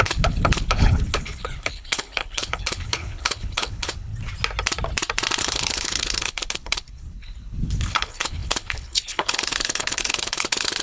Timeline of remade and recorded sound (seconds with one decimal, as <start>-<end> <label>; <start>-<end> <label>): 0.0-4.1 remade; 4.1-5.4 recorded; 5.4-10.8 remade